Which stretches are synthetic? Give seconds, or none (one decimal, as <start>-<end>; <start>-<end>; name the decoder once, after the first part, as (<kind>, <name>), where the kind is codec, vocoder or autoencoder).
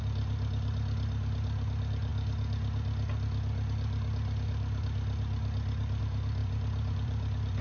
6.4-7.6 (vocoder, BigVGAN v2)